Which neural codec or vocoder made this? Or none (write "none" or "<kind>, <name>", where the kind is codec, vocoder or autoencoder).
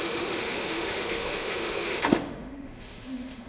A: autoencoder, DAC-VAE